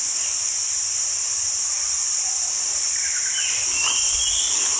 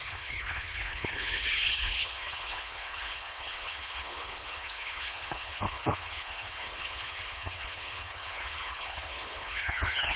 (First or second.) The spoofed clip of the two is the second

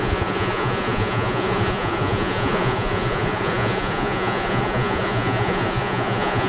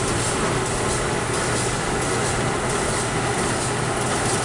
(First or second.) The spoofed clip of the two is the first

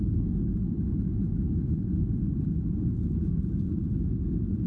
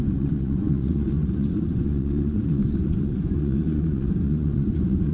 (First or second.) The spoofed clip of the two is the second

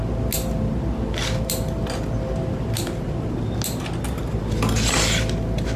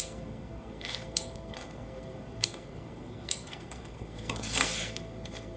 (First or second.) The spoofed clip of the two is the second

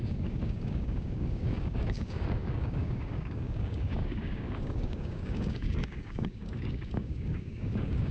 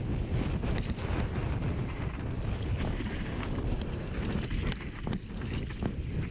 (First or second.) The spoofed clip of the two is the first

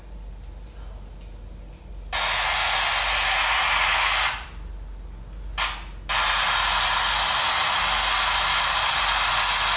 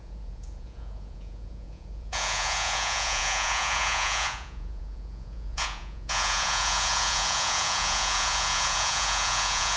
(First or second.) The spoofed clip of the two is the second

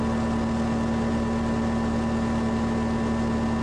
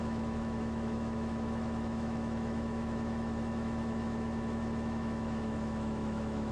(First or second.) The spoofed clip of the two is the second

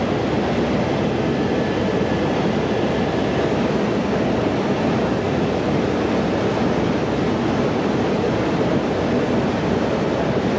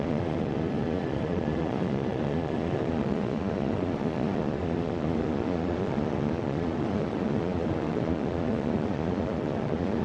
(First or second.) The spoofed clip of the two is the second